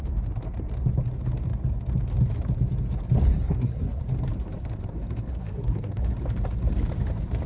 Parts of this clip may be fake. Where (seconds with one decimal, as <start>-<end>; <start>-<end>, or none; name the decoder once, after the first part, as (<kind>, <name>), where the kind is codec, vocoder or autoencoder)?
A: 3.3-4.0 (codec, SNAC); 5.3-6.0